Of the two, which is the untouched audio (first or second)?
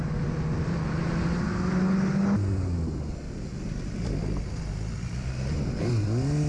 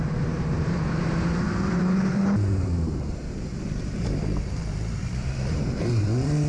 first